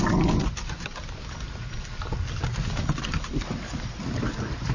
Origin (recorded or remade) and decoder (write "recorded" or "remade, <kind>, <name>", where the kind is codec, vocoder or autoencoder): recorded